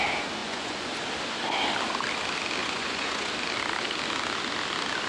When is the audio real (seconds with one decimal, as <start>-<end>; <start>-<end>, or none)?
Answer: 0.0-0.4; 0.9-2.6; 3.3-5.1